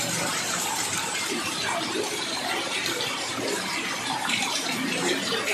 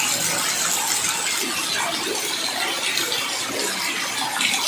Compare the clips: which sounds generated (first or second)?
first